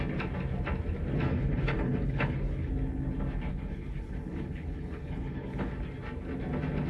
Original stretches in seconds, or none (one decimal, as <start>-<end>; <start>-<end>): 0.0-1.3; 2.7-3.5; 5.7-6.9